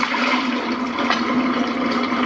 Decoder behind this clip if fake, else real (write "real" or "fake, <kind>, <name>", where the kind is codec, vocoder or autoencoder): real